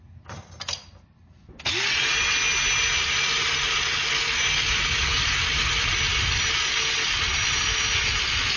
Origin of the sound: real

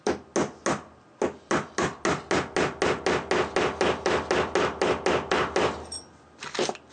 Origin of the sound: real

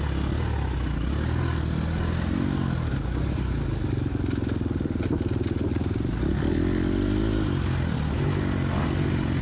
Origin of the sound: real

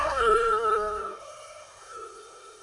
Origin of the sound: fake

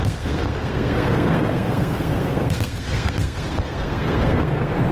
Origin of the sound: fake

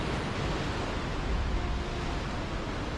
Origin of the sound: real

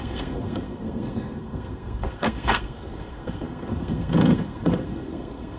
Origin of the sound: fake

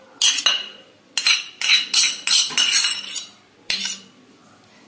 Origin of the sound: real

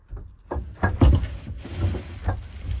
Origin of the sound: real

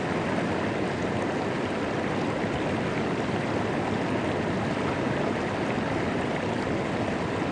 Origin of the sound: real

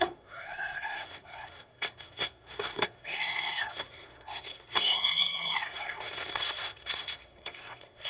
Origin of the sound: fake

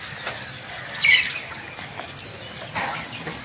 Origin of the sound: real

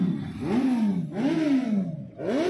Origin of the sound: real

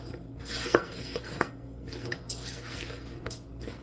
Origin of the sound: fake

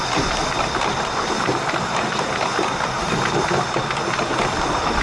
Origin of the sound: real